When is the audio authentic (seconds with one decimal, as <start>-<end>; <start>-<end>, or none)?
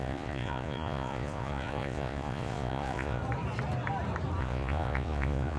3.2-4.4